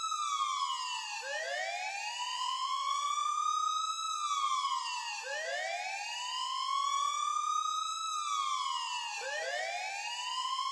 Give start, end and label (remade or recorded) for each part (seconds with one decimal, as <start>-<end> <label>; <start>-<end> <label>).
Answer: 0.0-2.3 recorded; 2.3-3.1 remade; 3.1-10.7 recorded